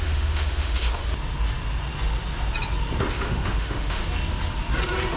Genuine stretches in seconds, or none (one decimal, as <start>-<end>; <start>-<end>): 1.0-3.1; 4.0-5.2